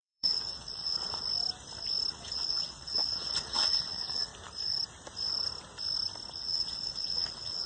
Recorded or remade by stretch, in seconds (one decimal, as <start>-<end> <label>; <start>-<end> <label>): 0.0-1.2 remade; 1.2-2.1 recorded; 2.1-4.3 remade; 4.3-6.3 recorded; 6.3-7.7 remade